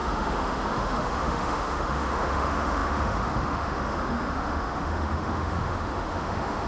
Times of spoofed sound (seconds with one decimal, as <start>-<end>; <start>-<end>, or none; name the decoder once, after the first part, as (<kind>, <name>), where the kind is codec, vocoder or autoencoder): 0.0-6.7 (autoencoder, DAC-VAE)